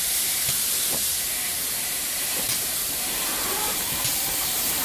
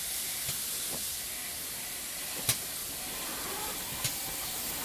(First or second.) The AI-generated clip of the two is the first